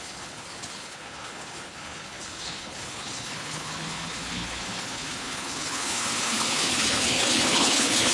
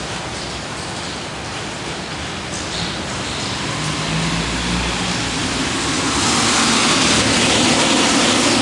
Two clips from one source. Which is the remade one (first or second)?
first